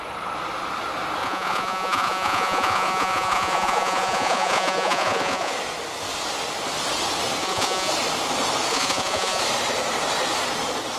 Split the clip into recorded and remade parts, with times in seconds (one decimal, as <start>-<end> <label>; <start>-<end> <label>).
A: 0.0-1.2 recorded; 1.2-5.5 remade; 5.5-7.4 recorded; 7.4-7.9 remade; 7.9-8.7 recorded; 8.7-9.4 remade; 9.4-11.0 recorded